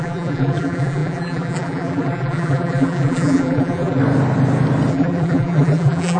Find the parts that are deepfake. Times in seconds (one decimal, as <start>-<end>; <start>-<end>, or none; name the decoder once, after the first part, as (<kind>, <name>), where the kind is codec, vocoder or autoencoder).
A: 0.0-4.0 (vocoder, BigVGAN v2); 4.9-6.2